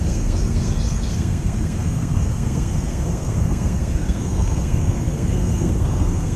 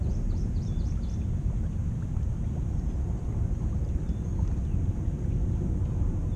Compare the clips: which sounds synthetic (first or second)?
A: first